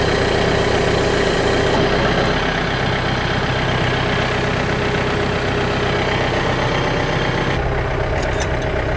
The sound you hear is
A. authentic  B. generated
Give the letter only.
A